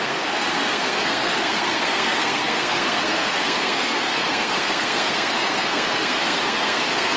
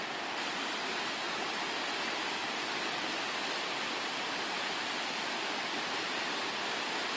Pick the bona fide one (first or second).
second